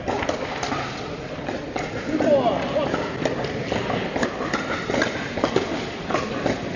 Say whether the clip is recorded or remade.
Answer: recorded